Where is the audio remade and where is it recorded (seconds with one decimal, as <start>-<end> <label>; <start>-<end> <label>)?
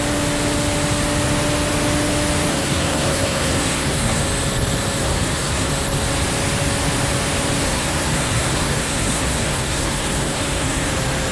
0.0-2.5 recorded; 2.5-4.2 remade; 4.2-5.0 recorded; 5.0-5.7 remade; 5.7-7.6 recorded; 7.6-10.9 remade; 10.9-11.3 recorded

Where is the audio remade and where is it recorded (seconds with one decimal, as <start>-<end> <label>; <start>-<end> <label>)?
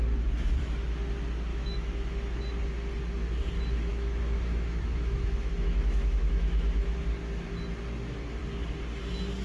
0.0-1.5 recorded; 1.5-2.4 remade; 2.4-3.9 recorded; 3.9-7.0 remade; 7.0-9.4 recorded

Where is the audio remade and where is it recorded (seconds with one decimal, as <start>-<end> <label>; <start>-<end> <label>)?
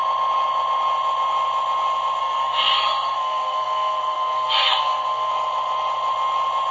0.0-2.2 recorded; 2.2-5.3 remade; 5.3-6.7 recorded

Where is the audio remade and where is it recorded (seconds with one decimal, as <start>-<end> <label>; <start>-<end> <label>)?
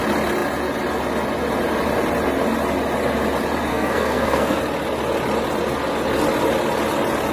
0.0-3.7 recorded; 3.7-4.6 remade; 4.6-7.3 recorded